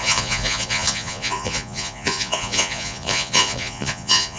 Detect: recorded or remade remade